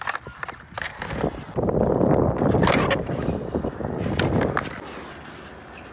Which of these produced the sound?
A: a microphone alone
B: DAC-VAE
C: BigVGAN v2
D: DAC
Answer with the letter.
A